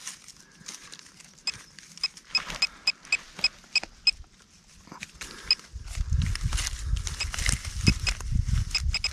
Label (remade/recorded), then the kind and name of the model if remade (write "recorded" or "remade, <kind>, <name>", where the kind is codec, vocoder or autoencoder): recorded